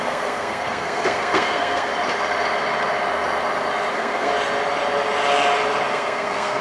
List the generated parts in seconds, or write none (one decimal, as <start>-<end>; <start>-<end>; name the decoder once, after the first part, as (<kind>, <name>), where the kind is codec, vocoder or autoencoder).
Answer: 0.0-1.9 (codec, SNAC); 3.9-4.3; 5.9-6.6